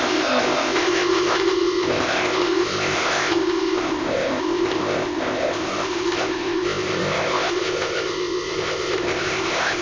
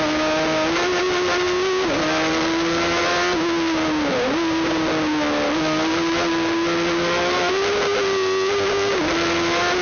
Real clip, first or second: second